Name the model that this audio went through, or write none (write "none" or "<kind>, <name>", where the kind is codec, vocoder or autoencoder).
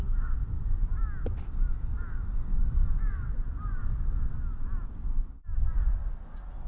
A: none